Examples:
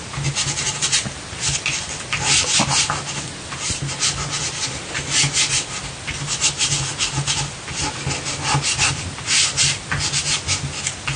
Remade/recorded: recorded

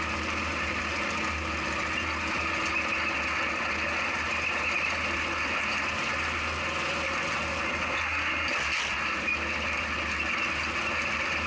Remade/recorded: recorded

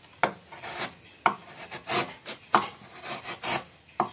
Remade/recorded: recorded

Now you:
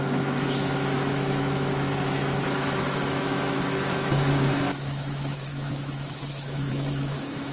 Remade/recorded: remade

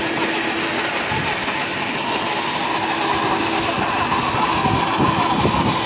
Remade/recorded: recorded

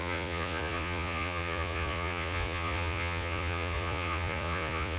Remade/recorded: remade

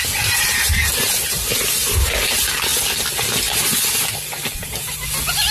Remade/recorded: recorded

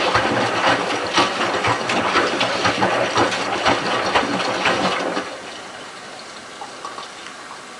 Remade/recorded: recorded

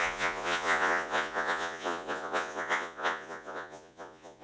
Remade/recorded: remade